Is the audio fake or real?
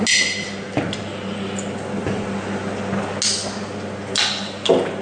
real